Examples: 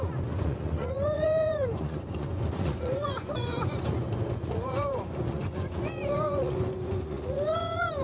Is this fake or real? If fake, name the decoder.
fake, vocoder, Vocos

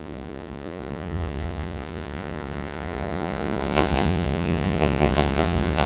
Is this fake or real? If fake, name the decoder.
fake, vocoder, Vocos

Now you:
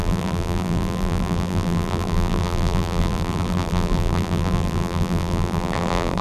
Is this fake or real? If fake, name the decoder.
fake, vocoder, BigVGAN v2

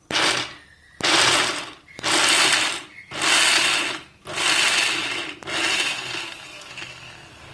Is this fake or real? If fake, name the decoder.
real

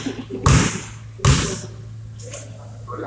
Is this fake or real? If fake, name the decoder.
real